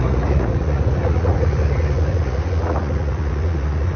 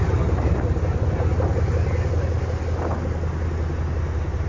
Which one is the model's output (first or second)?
first